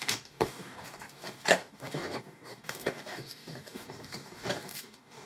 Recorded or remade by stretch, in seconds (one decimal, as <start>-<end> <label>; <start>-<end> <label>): 0.0-5.3 remade